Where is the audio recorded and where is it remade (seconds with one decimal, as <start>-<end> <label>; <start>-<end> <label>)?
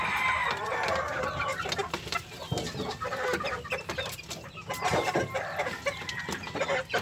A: 0.0-0.4 recorded; 0.4-1.2 remade; 1.2-4.9 recorded; 4.9-6.2 remade; 6.2-7.0 recorded